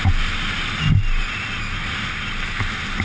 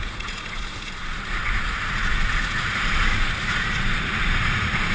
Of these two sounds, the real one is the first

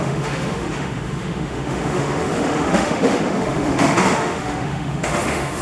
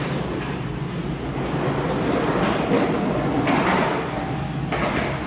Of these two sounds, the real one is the second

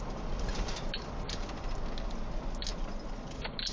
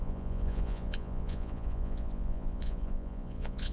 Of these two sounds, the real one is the first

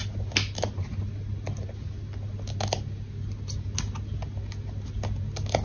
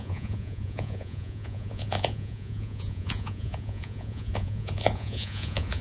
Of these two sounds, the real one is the first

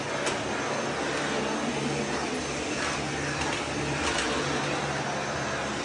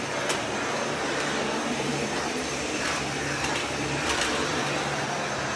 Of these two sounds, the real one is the first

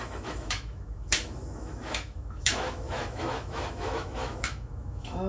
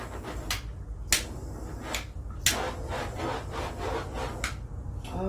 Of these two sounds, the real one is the second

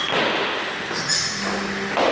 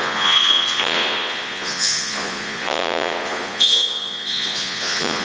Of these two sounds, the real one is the first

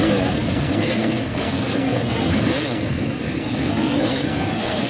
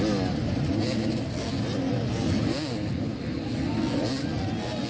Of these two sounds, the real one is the second